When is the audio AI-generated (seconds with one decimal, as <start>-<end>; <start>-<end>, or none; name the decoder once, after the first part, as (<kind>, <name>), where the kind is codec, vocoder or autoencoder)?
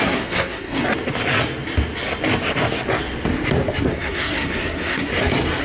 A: 0.0-0.8 (codec, SNAC); 3.8-5.1